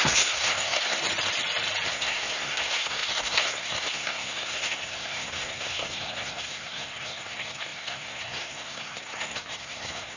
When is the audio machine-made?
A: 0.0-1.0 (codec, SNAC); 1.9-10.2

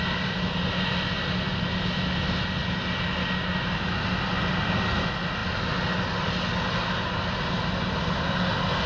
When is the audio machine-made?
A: none

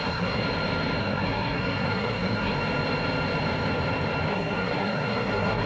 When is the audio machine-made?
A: 0.0-0.4 (codec, SNAC); 1.0-2.5; 4.3-5.7